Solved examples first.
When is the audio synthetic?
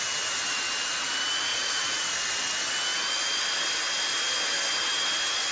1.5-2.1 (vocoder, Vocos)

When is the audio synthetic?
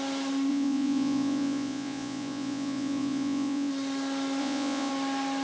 0.5-3.7 (vocoder, Vocos); 4.4-4.9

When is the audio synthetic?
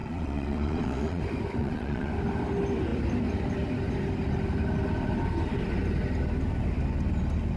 0.0-1.2 (vocoder, Vocos); 1.6-2.1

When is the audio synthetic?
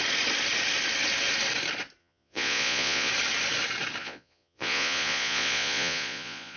2.0-3.1 (vocoder, Vocos); 4.0-6.6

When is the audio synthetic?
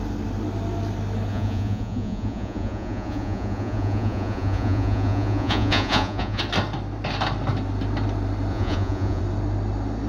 1.3-6.4 (vocoder, Vocos); 8.5-9.2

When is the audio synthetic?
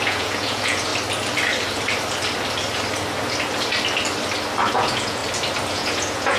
0.0-0.9 (vocoder, Vocos); 4.7-5.2; 5.7-6.4